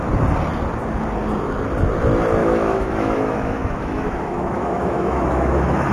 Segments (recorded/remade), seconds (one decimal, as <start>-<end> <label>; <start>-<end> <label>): 0.0-2.4 recorded; 2.4-5.9 remade